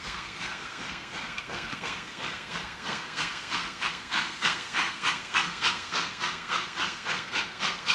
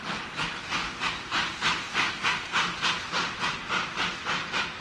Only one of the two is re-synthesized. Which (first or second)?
first